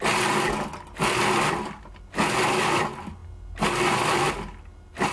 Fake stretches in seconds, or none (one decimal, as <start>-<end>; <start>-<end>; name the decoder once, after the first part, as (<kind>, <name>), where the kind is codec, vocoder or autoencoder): none